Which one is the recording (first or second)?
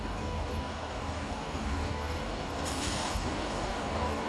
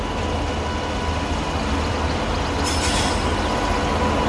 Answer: second